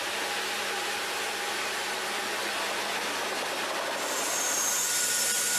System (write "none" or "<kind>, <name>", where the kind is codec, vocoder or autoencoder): none